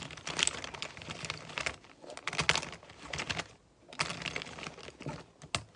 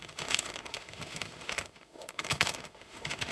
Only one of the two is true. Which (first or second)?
first